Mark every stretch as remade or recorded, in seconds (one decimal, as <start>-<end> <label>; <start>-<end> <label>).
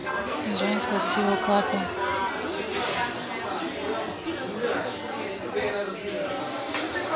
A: 0.0-0.6 remade; 0.6-7.2 recorded